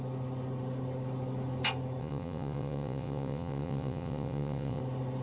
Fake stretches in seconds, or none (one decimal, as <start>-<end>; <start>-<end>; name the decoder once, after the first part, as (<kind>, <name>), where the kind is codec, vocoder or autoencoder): 2.0-4.8 (vocoder, WaveNeXt)